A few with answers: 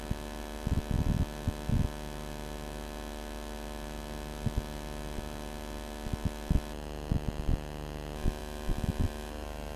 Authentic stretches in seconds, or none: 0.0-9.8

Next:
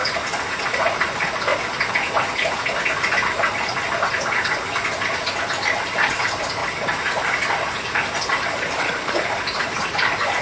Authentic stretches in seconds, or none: 0.0-0.7; 1.5-5.5; 6.6-8.3

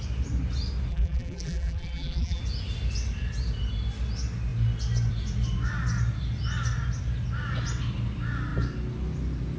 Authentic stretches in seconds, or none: 0.0-0.9; 2.4-9.6

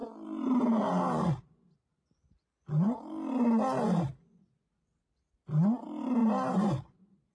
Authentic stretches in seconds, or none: 0.0-6.2

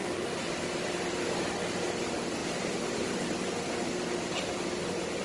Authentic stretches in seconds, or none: 0.0-2.4; 3.7-5.2

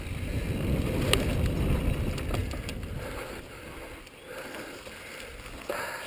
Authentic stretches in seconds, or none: 0.0-2.4